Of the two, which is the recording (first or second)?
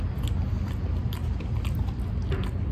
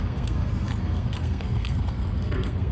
first